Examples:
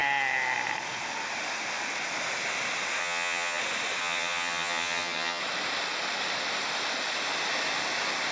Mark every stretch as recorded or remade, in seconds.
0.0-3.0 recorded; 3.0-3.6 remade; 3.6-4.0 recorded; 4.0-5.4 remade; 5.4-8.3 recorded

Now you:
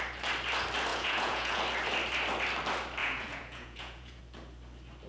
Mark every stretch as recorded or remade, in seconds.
0.0-0.9 recorded; 0.9-1.6 remade; 1.6-3.0 recorded; 3.0-4.2 remade; 4.2-5.1 recorded

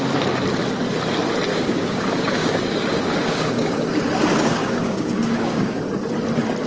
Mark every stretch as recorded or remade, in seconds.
0.0-1.5 recorded; 1.5-3.9 remade; 3.9-4.3 recorded; 4.3-5.8 remade; 5.8-6.7 recorded

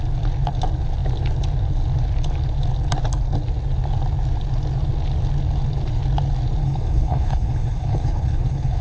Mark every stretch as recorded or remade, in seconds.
0.0-6.6 recorded; 6.6-8.8 remade

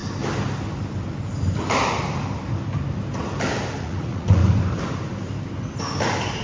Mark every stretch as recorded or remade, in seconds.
0.0-3.8 recorded; 3.8-4.4 remade; 4.4-6.4 recorded

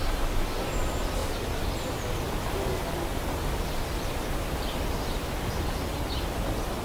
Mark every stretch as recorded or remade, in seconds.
0.0-6.8 recorded

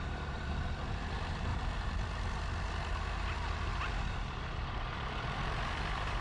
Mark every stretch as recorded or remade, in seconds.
0.0-3.7 recorded; 3.7-6.2 remade